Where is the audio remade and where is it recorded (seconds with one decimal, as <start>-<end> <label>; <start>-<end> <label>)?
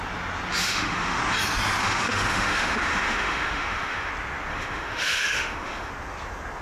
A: 0.0-0.6 recorded; 0.6-1.2 remade; 1.2-1.8 recorded; 1.8-4.1 remade; 4.1-4.5 recorded; 4.5-5.9 remade; 5.9-6.6 recorded